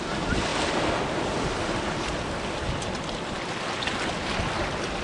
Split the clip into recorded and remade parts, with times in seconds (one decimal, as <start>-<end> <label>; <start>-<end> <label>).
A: 0.0-5.0 recorded